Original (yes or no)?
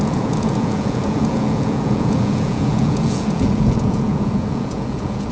no